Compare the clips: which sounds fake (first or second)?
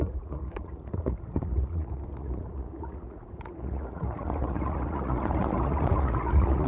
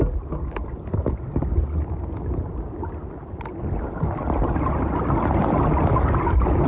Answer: first